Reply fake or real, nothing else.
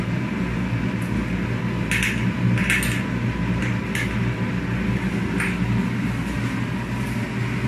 real